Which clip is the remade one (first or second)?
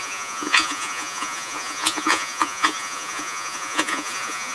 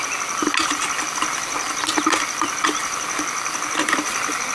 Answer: first